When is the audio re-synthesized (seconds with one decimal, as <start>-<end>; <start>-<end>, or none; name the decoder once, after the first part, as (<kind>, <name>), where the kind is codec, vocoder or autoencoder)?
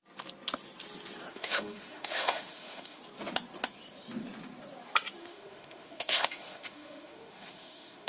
1.3-3.0 (autoencoder, DAC-VAE); 5.2-8.1